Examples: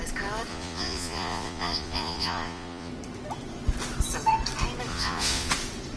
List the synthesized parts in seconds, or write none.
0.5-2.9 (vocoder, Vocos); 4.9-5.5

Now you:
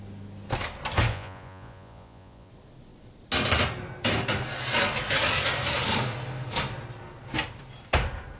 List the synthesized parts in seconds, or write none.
1.1-2.5 (vocoder, Vocos)

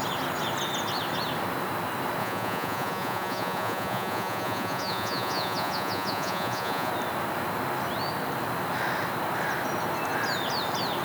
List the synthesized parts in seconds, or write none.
2.2-6.9 (vocoder, Vocos)

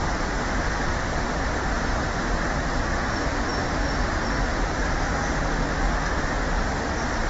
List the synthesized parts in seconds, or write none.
none

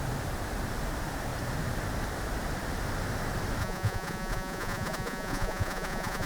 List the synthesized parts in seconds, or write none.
3.6-6.3 (vocoder, Vocos)

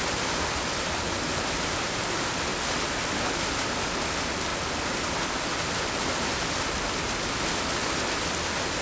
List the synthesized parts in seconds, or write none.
none